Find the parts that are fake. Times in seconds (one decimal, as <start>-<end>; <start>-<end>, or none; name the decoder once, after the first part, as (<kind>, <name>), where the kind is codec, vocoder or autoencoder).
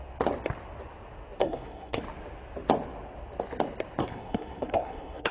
1.4-2.0 (codec, SNAC); 4.0-5.3